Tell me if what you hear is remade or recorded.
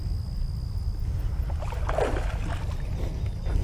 recorded